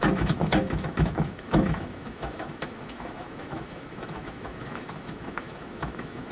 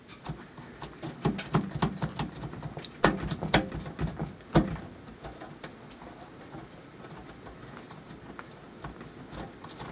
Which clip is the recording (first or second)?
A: second